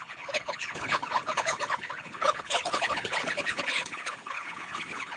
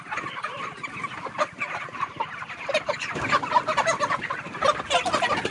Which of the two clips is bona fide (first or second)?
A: second